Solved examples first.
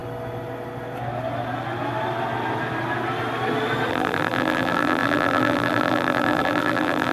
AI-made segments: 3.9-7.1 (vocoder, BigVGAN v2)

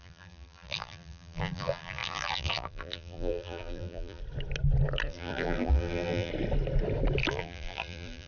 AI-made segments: 0.0-4.2 (vocoder, BigVGAN v2); 5.1-6.3; 7.3-8.3

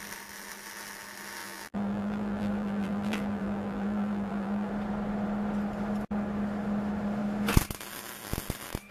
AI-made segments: 1.4-4.7 (vocoder, BigVGAN v2)

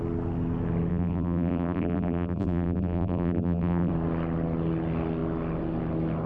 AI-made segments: 0.9-3.9 (vocoder, BigVGAN v2)